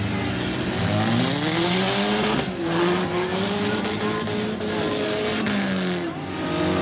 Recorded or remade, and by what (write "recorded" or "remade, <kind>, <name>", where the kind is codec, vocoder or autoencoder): recorded